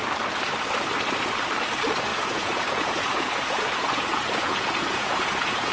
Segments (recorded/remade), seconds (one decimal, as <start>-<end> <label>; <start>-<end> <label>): 0.0-2.1 recorded; 2.1-5.7 remade